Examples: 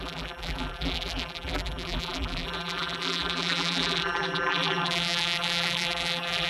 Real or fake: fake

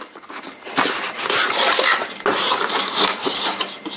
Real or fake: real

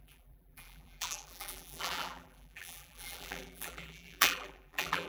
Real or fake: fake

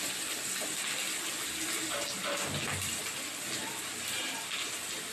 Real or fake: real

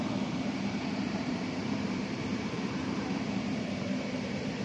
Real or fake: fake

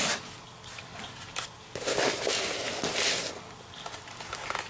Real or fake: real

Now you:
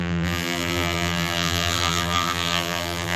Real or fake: fake